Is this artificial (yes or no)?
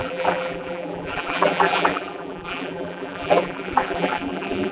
yes